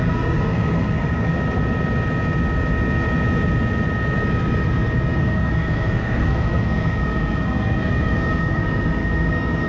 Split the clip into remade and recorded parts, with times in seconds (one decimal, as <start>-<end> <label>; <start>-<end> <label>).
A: 0.0-1.3 remade; 1.3-5.2 recorded; 5.2-9.7 remade

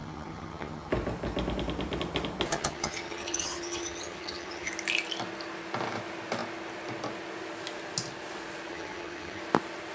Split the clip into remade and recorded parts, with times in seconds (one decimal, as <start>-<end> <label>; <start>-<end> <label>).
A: 0.0-0.9 remade; 0.9-2.5 recorded; 2.5-4.7 remade; 4.7-8.7 recorded; 8.7-9.4 remade; 9.4-9.9 recorded